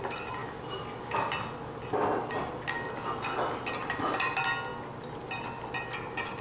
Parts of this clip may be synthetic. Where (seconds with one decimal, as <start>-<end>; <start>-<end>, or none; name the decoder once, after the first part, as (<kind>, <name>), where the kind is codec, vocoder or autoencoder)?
none

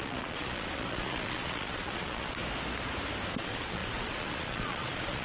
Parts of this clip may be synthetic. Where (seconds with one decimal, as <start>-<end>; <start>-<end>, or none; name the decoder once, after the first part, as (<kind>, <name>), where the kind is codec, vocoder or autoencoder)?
0.0-2.4 (vocoder, Vocos); 3.4-5.2

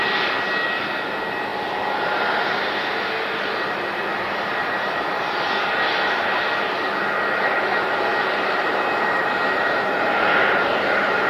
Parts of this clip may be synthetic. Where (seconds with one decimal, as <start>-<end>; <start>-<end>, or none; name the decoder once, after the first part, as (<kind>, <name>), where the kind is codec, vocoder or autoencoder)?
9.6-10.7 (vocoder, BigVGAN v2)

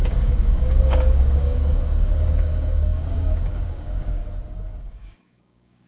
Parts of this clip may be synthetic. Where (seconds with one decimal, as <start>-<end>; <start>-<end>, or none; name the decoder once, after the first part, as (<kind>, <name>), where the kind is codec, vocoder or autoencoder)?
0.0-4.2 (codec, DAC); 4.8-5.9